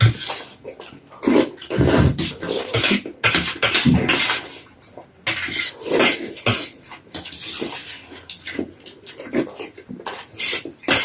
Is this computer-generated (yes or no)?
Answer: no